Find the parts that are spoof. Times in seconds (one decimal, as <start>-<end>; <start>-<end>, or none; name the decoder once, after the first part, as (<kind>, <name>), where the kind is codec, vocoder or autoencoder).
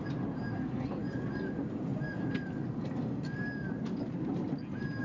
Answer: none